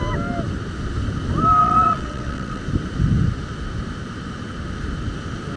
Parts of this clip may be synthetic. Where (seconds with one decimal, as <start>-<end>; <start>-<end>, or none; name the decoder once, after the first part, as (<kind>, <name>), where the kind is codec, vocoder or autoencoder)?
1.6-2.6 (vocoder, WaveNeXt)